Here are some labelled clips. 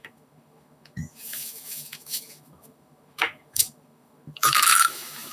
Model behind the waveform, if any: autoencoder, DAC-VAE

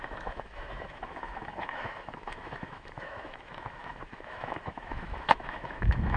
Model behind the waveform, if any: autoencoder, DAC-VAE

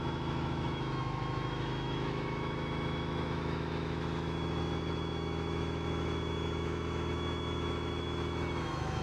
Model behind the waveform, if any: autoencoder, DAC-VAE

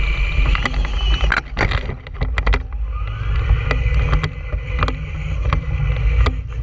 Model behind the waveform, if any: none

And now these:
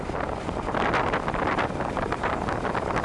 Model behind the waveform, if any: none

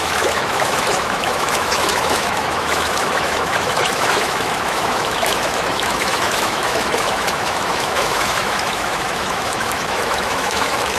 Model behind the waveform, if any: autoencoder, DAC-VAE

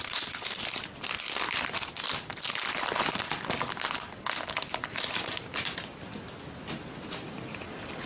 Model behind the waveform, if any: none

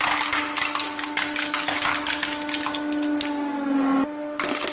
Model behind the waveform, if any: none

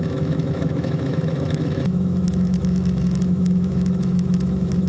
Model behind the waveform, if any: autoencoder, DAC-VAE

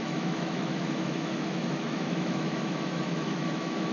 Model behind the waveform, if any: autoencoder, DAC-VAE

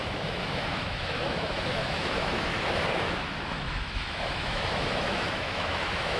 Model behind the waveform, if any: autoencoder, DAC-VAE